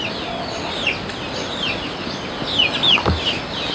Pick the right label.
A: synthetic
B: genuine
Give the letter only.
B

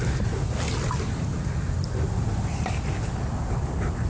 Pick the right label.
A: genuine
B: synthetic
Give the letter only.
A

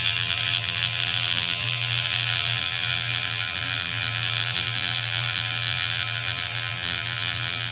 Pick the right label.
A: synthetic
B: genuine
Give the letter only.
A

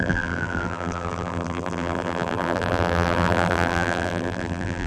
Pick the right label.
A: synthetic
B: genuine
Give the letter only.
A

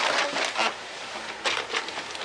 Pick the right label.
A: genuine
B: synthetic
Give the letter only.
A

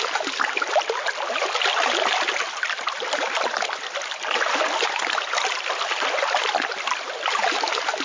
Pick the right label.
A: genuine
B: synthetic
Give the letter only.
A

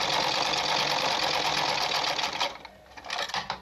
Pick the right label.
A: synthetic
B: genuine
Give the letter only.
B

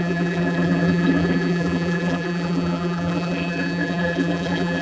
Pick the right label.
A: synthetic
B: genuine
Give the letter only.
A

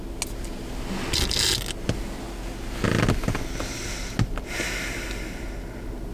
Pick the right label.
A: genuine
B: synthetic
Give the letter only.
A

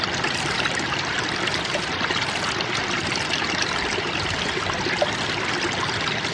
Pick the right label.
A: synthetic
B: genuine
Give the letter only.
A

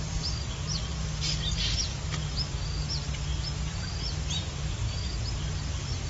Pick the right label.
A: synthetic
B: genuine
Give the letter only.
B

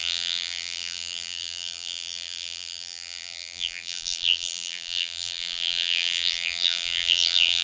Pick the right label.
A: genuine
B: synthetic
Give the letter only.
B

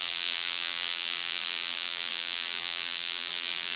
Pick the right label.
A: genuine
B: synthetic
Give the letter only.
B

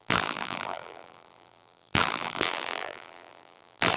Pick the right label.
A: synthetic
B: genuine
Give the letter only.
A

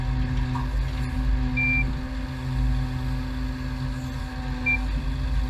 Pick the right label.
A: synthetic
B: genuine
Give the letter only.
B